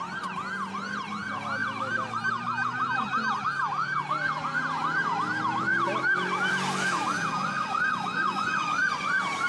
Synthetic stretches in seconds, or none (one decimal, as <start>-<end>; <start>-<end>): 7.4-9.1